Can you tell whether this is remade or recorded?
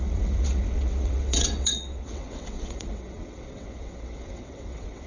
remade